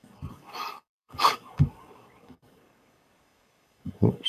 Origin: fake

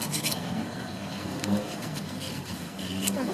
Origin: fake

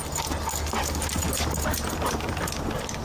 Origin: real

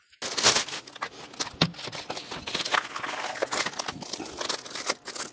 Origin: real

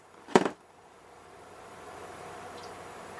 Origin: fake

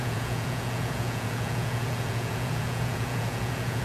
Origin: fake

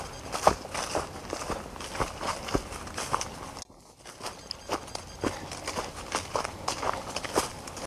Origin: real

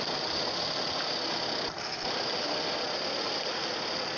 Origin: real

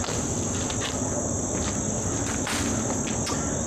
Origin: real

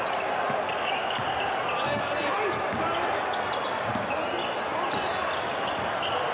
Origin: real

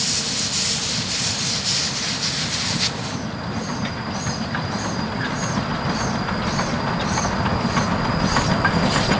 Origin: real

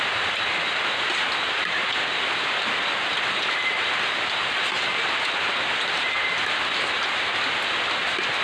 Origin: real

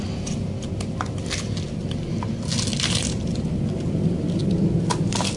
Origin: real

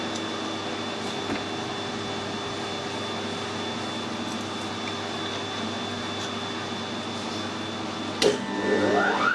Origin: real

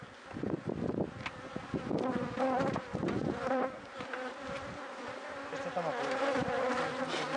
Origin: real